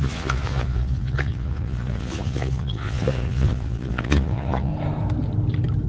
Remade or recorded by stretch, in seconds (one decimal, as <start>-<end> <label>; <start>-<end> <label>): 0.0-4.7 remade; 4.7-5.9 recorded